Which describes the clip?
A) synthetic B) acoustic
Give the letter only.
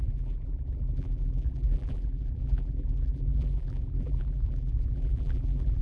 A